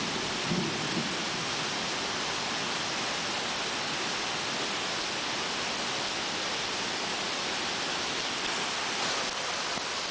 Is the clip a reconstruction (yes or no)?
no